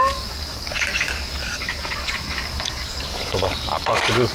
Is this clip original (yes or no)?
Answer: no